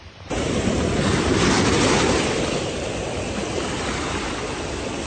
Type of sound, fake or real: real